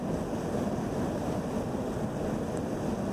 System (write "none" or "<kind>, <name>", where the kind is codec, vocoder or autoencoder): none